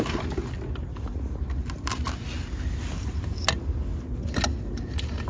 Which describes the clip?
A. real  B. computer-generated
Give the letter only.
A